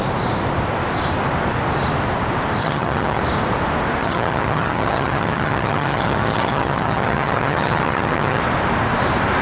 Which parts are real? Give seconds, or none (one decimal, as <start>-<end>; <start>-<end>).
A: 0.0-2.6; 3.2-4.0; 8.4-9.4